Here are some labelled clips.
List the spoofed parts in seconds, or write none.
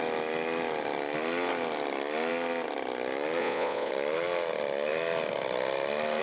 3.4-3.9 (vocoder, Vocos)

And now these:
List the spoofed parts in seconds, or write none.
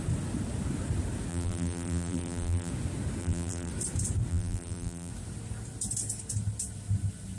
1.3-2.7 (vocoder, BigVGAN v2); 3.2-3.7; 4.3-5.1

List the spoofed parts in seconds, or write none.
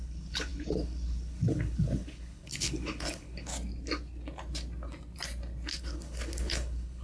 0.0-3.5 (codec, HILCodec); 5.8-7.0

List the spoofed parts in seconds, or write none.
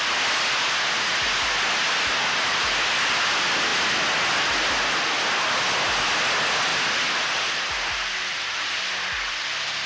none